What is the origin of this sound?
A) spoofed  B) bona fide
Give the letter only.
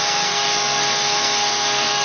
A